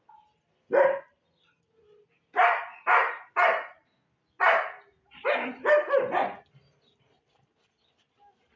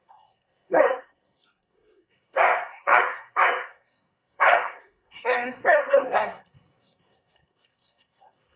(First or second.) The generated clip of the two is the second